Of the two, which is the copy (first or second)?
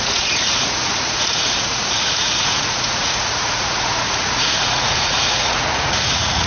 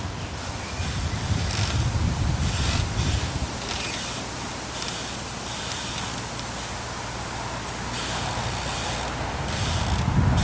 first